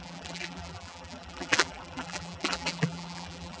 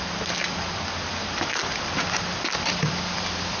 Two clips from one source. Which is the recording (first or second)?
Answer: second